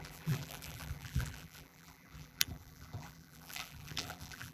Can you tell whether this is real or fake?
fake